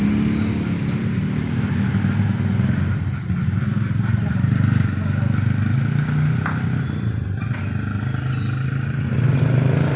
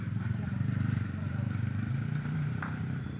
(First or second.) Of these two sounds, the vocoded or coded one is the second